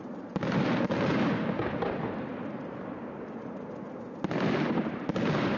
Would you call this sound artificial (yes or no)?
no